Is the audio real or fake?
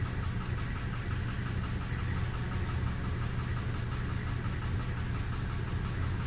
real